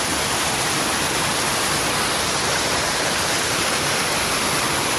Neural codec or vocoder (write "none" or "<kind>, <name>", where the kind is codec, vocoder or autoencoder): none